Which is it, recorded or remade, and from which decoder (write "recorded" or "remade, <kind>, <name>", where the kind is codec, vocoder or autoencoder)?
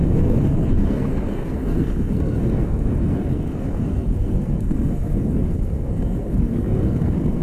remade, codec, SNAC